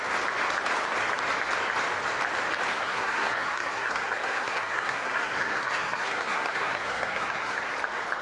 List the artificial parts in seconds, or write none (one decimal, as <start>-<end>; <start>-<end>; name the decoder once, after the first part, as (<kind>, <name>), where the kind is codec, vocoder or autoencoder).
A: 2.7-7.6 (codec, SNAC)